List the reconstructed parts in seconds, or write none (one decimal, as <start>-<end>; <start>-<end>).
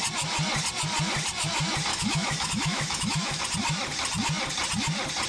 1.9-3.4